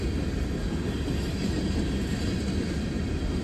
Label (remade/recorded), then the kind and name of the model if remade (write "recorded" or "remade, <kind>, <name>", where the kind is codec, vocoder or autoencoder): recorded